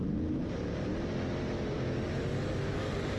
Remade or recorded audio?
recorded